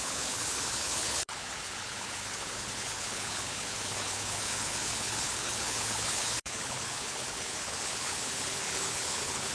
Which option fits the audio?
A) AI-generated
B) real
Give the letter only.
A